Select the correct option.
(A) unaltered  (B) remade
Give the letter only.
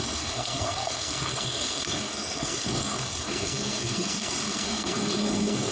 B